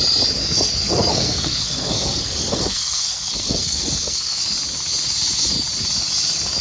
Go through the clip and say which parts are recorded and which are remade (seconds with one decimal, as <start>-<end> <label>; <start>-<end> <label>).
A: 0.0-0.4 recorded; 0.4-4.4 remade; 4.4-6.6 recorded